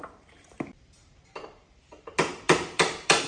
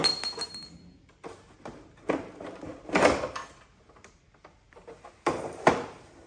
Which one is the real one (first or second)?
second